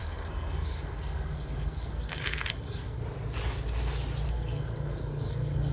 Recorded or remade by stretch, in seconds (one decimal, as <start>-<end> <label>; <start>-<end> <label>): 0.0-3.0 remade; 3.0-4.3 recorded; 4.3-5.7 remade